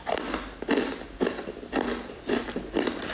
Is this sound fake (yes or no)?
no